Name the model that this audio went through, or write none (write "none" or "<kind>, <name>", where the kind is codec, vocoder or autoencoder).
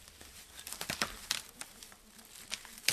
none